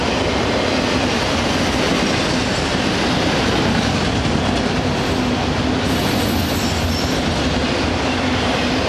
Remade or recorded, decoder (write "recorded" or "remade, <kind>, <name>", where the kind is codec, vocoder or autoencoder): remade, vocoder, BigVGAN v2